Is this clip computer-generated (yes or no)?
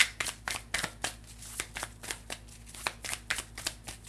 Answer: no